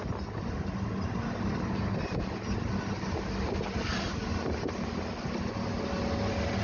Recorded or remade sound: recorded